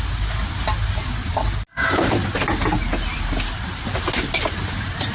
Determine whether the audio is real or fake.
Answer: real